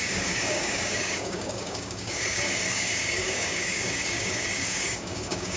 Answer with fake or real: fake